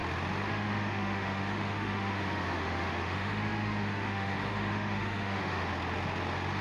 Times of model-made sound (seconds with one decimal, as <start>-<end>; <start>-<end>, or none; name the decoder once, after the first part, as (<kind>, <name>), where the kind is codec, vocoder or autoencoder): 0.5-5.7 (autoencoder, DAC-VAE)